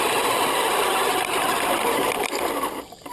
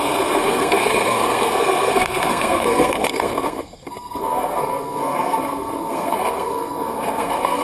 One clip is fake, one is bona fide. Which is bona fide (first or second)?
first